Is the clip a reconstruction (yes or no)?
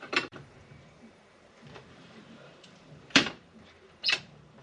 yes